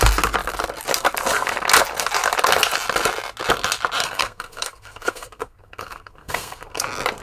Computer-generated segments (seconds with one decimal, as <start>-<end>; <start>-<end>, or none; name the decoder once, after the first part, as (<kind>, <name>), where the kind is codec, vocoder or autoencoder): 4.0-6.8 (codec, SNAC)

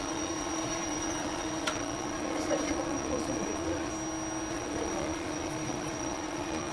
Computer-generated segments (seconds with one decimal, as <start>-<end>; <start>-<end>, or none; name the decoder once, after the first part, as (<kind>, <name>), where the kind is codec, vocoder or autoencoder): 0.0-3.9 (vocoder, Vocos); 4.5-6.7

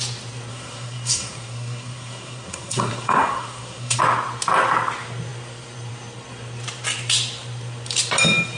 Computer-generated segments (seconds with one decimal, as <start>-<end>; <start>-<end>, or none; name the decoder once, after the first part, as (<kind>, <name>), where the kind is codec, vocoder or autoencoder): 0.5-4.0 (codec, SNAC)

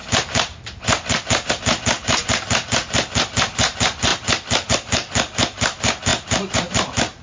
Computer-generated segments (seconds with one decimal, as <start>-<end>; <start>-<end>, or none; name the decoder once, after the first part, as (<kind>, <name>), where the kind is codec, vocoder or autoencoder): none

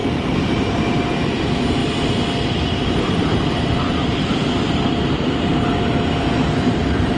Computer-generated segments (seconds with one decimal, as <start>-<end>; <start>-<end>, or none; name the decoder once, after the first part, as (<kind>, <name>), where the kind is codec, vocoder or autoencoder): 0.0-1.8 (vocoder, BigVGAN v2); 3.0-7.2

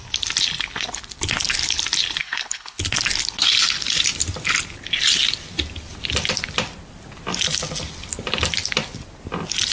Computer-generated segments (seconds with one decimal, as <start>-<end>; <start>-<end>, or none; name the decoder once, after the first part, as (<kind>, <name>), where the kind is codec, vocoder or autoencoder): 2.2-2.8 (codec, HILCodec)